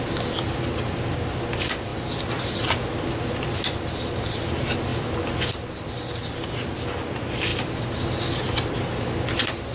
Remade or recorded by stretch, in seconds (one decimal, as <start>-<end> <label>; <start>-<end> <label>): 0.0-9.7 recorded